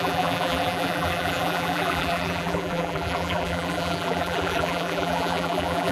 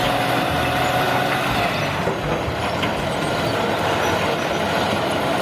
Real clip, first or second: second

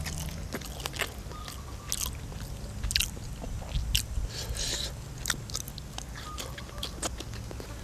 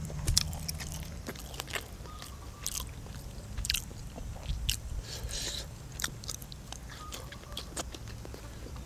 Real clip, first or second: first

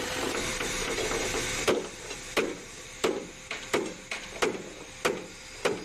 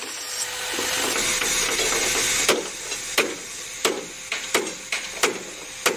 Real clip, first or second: second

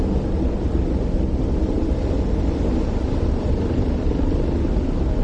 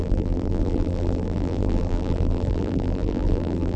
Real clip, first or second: first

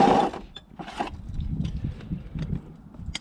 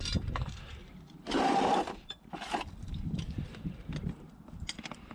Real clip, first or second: first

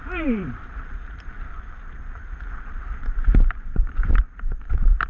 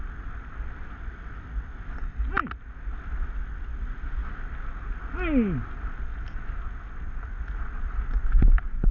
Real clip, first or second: second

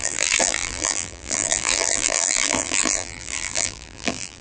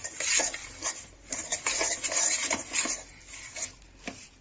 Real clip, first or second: second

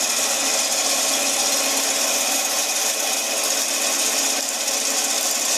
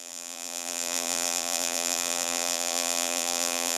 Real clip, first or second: first